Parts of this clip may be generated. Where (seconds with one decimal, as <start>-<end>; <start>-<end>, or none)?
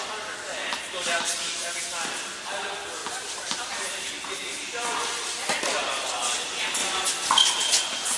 0.6-1.2; 3.0-4.1